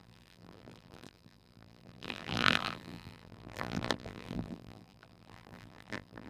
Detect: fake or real fake